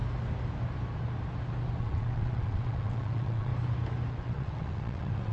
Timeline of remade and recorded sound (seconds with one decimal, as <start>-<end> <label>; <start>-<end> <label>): 0.0-1.8 recorded; 1.8-3.5 remade; 3.5-4.1 recorded; 4.1-5.3 remade